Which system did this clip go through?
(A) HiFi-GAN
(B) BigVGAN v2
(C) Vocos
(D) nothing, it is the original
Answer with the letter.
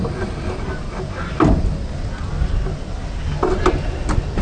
D